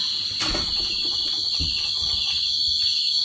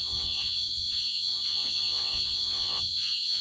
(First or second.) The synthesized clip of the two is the second